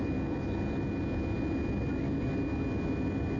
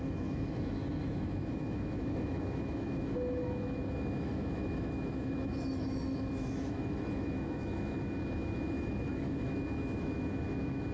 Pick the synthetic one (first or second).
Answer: second